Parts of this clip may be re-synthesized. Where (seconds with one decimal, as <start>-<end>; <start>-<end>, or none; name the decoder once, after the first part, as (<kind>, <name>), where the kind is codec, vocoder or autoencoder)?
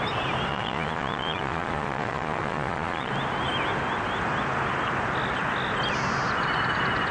0.5-3.1 (vocoder, Vocos)